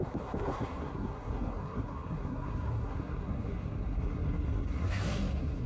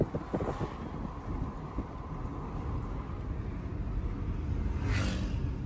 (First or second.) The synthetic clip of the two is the first